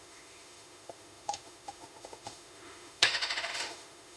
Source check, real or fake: fake